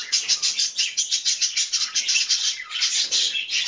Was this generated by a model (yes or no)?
yes